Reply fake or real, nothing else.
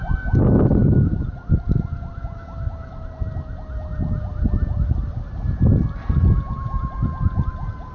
real